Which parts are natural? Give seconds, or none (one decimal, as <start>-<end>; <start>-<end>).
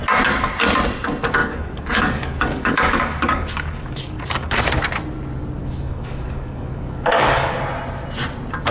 0.0-1.4; 4.6-5.6; 7.6-8.7